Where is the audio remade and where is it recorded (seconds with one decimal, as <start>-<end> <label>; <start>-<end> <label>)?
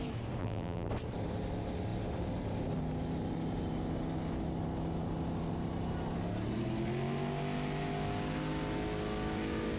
0.0-0.4 recorded; 0.4-0.9 remade; 0.9-9.8 recorded